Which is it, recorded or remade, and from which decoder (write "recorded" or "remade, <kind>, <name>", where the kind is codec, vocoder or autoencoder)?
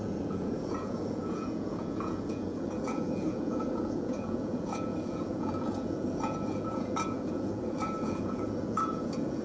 remade, vocoder, Vocos